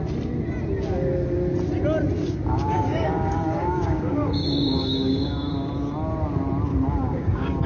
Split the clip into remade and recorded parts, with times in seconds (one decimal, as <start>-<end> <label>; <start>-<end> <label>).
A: 0.0-2.2 recorded; 2.2-5.7 remade; 5.7-6.7 recorded; 6.7-7.7 remade